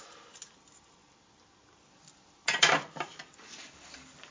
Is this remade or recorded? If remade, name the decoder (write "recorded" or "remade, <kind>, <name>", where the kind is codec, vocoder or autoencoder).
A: recorded